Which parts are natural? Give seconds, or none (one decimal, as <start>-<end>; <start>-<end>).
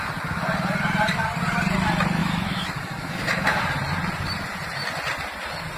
0.0-2.2; 3.6-5.8